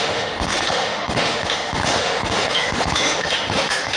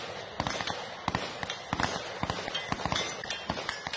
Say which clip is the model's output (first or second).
first